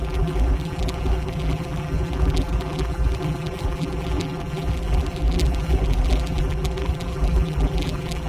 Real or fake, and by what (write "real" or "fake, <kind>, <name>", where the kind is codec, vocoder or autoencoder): fake, vocoder, BigVGAN v2